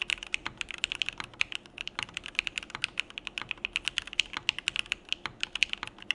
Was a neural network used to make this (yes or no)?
no